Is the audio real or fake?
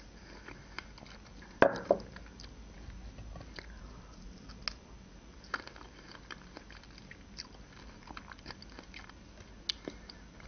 real